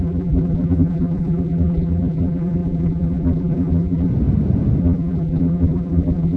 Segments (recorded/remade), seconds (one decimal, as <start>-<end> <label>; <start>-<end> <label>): 0.0-4.1 remade; 4.1-4.8 recorded; 4.8-6.4 remade